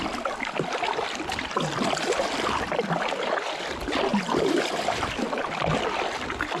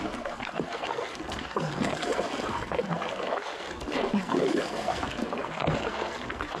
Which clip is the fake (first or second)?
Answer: second